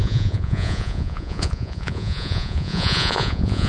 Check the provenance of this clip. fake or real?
fake